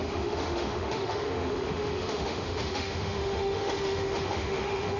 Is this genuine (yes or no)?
no